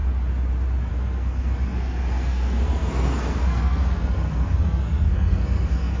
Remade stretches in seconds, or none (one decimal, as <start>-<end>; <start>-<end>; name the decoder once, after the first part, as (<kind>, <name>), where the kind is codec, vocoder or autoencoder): 0.9-6.0 (codec, SNAC)